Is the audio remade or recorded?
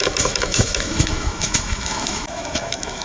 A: remade